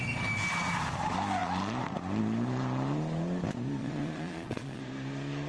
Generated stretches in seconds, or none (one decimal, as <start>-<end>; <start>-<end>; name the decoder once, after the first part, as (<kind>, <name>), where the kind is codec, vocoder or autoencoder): 3.8-4.8 (vocoder, Vocos)